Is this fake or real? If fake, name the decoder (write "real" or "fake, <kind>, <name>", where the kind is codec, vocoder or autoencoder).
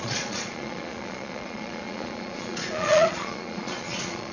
fake, vocoder, Vocos